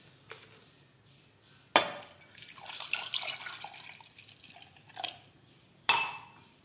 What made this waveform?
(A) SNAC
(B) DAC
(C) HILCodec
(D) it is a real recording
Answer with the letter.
D